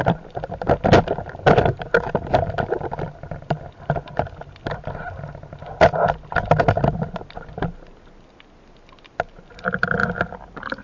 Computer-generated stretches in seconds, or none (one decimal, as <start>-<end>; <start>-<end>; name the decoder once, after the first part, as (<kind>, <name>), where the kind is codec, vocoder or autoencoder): none